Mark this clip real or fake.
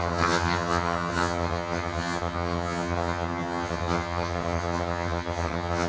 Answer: fake